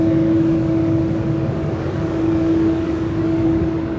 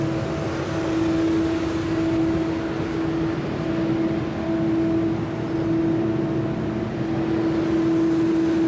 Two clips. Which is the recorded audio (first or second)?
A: second